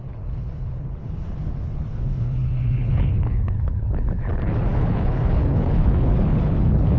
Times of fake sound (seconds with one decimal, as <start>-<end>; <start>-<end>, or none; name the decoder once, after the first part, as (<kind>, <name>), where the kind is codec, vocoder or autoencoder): 0.0-7.0 (codec, HILCodec)